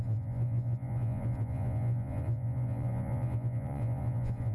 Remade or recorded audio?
remade